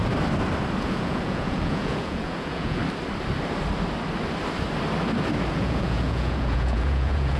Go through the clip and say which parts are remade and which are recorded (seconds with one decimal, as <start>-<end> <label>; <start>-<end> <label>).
0.0-0.8 recorded; 0.8-2.8 remade; 2.8-5.5 recorded; 5.5-7.4 remade